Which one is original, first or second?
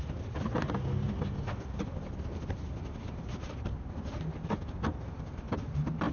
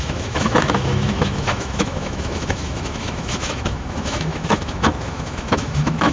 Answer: first